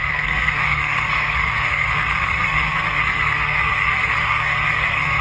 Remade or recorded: remade